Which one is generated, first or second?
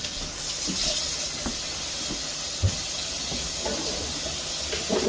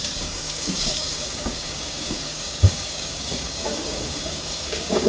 second